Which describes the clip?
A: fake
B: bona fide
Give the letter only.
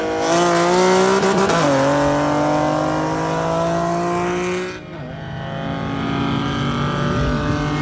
B